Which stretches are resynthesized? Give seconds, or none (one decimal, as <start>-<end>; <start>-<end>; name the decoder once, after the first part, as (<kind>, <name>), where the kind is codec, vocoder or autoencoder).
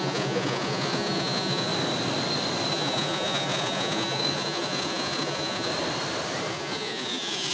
0.0-1.7 (vocoder, Vocos); 2.7-5.7; 6.5-7.5